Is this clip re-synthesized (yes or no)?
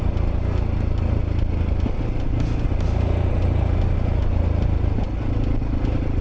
no